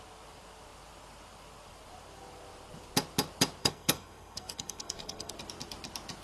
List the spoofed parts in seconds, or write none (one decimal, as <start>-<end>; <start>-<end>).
3.6-5.3